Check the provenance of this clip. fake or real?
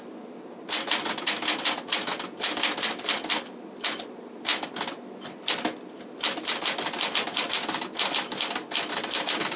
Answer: real